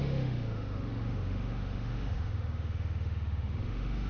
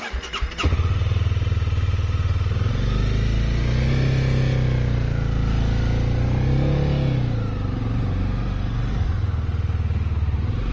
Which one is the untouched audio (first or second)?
second